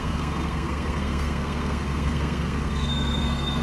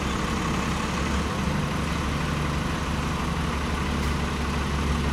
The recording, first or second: second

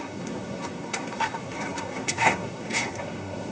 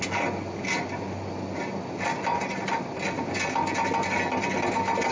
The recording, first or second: second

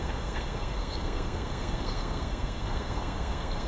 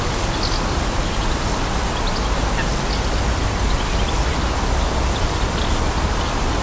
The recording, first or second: second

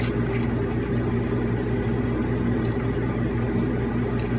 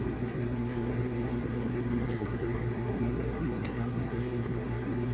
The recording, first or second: first